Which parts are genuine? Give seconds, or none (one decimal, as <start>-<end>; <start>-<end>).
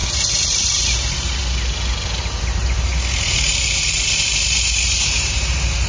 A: 1.4-2.4